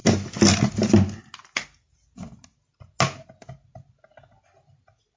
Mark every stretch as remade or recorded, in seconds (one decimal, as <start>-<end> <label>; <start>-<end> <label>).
0.0-5.2 recorded